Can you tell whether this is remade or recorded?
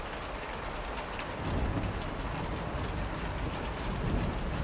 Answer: recorded